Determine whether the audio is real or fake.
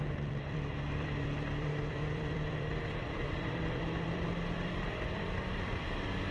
fake